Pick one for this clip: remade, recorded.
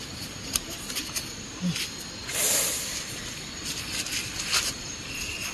recorded